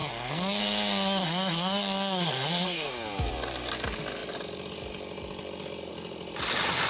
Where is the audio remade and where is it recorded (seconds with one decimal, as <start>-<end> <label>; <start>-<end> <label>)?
0.0-0.6 remade; 0.6-1.2 recorded; 1.2-2.9 remade; 2.9-6.9 recorded